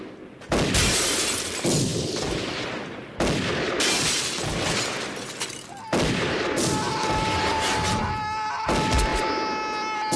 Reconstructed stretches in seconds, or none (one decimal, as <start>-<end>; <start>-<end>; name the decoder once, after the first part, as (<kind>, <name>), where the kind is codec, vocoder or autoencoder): none